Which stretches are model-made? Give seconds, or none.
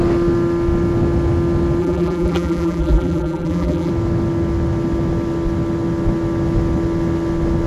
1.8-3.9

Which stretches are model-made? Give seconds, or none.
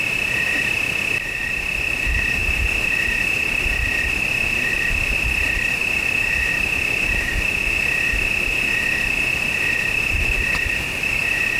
none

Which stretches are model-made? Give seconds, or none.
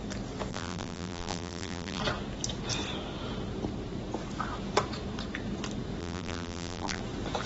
0.5-2.0; 6.0-7.0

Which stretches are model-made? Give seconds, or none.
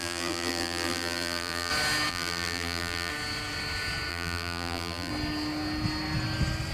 0.0-1.7; 2.1-3.1; 4.1-5.1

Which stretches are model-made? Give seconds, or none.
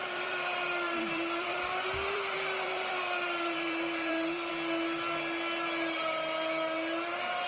0.0-4.5